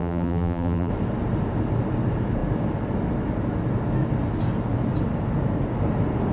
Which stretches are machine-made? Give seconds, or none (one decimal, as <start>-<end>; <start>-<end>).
0.0-0.9